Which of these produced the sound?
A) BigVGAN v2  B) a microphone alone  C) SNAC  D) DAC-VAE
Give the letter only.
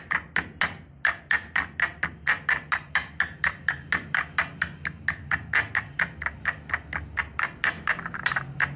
B